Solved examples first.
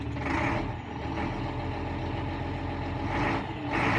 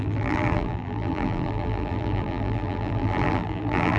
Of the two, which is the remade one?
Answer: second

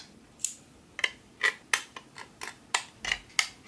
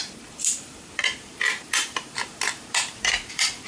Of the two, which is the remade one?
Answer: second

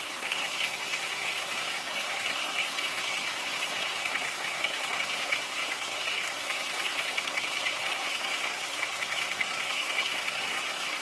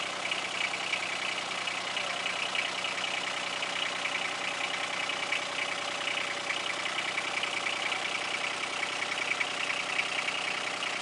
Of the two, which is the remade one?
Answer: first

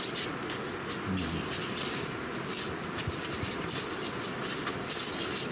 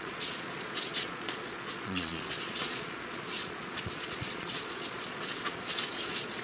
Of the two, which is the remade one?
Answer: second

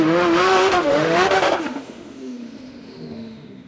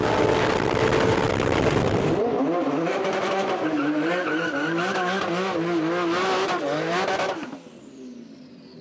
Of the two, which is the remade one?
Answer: first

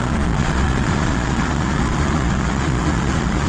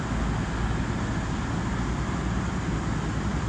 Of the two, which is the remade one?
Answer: first